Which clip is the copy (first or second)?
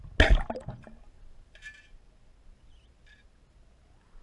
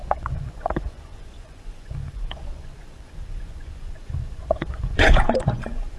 second